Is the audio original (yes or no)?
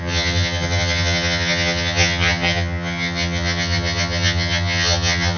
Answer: no